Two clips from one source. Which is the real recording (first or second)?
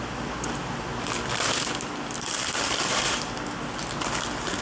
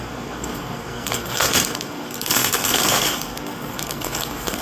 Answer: first